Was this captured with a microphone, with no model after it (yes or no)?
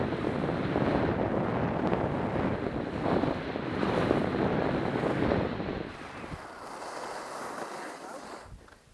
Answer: yes